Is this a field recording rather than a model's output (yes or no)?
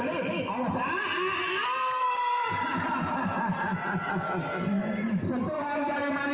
yes